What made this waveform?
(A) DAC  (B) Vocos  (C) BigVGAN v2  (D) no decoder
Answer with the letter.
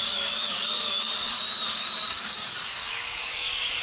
A